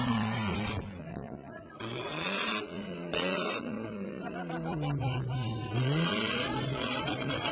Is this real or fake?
fake